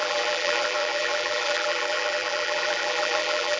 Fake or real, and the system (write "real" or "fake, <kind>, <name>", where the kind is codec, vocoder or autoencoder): fake, vocoder, BigVGAN v2